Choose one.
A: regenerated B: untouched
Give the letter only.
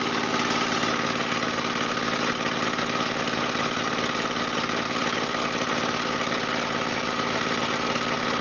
B